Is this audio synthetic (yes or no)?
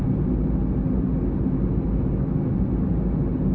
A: no